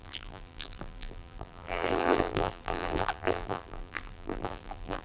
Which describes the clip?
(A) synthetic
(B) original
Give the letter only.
A